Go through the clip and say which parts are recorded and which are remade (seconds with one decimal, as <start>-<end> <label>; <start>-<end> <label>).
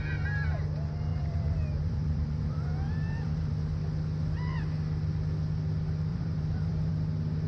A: 0.0-1.1 recorded; 1.1-3.5 remade; 3.5-6.1 recorded; 6.1-6.9 remade; 6.9-7.5 recorded